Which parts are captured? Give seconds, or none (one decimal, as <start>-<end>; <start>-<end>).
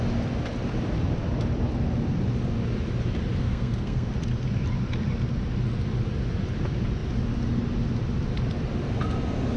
0.0-3.4; 4.1-9.6